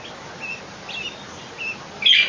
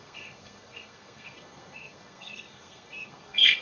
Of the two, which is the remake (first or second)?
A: second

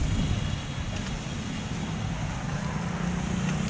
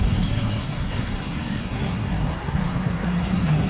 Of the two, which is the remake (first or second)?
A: second